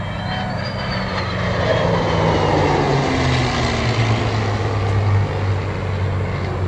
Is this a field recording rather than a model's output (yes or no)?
yes